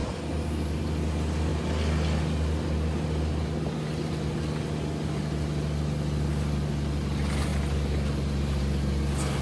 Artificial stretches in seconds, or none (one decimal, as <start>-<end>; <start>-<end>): none